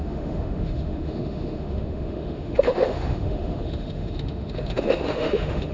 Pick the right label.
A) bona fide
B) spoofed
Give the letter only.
B